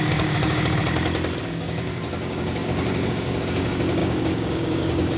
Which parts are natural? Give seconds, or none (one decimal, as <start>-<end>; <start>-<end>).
0.8-1.4